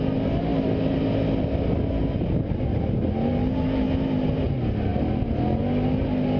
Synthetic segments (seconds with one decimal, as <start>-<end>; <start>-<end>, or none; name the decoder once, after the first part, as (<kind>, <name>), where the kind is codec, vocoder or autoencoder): none